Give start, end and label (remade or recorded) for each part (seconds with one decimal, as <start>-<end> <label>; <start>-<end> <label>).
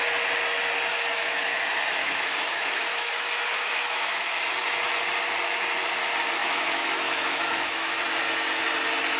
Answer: 0.0-0.9 recorded; 0.9-1.6 remade; 1.6-2.0 recorded; 2.0-4.4 remade; 4.4-6.4 recorded; 6.4-8.0 remade; 8.0-9.2 recorded